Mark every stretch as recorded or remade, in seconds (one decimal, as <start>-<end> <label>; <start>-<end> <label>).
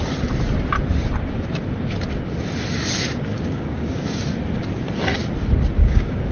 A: 0.0-3.3 recorded; 3.3-4.2 remade; 4.2-5.8 recorded; 5.8-6.3 remade